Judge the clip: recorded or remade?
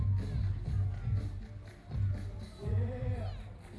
recorded